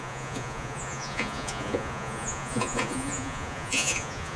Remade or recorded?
remade